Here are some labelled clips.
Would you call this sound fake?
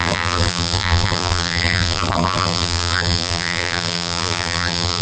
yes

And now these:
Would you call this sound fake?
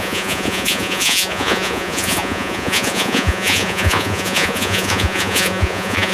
yes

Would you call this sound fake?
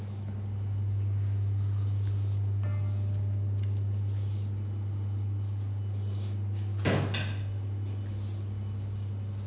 no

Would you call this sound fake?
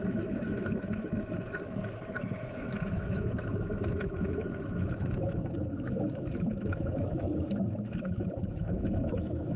yes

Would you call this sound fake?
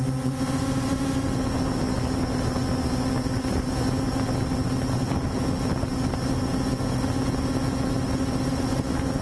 no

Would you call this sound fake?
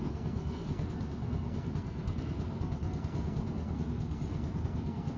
yes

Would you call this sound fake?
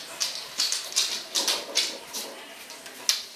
no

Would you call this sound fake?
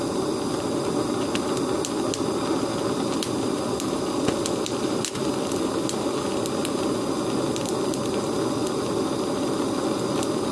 no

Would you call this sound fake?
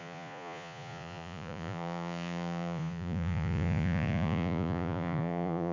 yes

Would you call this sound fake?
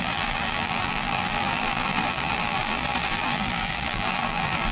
yes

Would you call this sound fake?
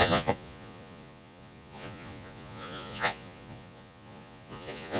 yes